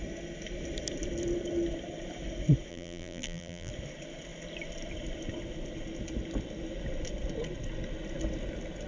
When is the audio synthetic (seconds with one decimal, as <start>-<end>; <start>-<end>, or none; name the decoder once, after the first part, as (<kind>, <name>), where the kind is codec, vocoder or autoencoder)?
2.7-3.7 (vocoder, BigVGAN v2)